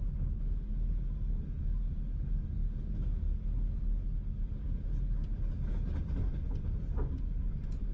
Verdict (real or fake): real